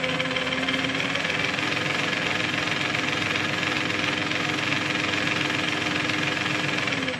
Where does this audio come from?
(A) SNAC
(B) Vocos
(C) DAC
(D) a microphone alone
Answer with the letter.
D